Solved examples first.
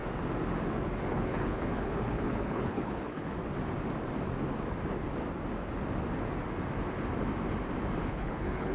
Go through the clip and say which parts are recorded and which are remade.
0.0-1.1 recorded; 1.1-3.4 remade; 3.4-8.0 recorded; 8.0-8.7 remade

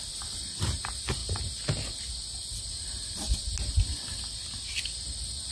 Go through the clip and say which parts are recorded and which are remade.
0.0-5.5 recorded

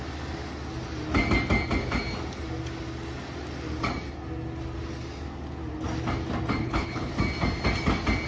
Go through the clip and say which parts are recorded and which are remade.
0.0-6.6 recorded; 6.6-7.1 remade; 7.1-8.3 recorded